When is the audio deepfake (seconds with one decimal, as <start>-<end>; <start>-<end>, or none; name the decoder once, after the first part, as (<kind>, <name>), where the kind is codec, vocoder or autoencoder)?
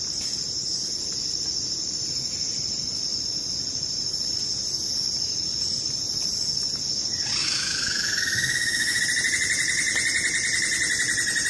7.4-9.0 (autoencoder, DAC-VAE)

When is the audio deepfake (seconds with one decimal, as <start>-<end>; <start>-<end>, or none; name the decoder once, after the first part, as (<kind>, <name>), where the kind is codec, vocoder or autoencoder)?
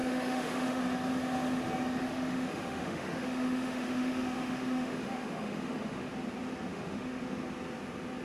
0.0-0.8 (autoencoder, DAC-VAE); 2.0-6.1; 6.7-7.2